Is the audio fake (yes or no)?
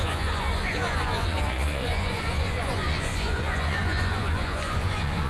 yes